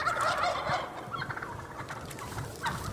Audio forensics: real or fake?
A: real